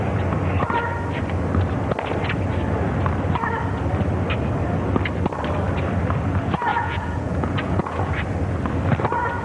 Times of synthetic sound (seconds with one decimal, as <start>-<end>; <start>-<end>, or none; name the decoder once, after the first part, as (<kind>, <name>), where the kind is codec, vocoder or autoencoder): 6.7-8.0 (vocoder, Vocos)